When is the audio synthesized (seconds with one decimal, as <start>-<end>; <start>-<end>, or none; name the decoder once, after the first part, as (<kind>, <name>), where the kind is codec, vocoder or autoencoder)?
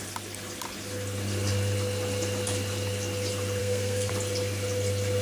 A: 3.6-4.1 (codec, SNAC)